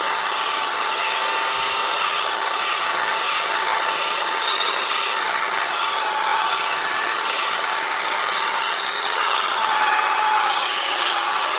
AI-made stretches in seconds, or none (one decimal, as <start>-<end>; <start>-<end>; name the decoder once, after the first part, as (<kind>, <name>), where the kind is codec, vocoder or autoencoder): 0.0-1.2 (vocoder, HiFi-GAN); 1.9-11.6